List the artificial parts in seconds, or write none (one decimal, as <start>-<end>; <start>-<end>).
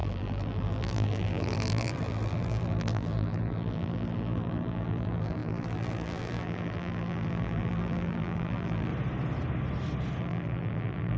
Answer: 0.0-8.9; 10.2-11.2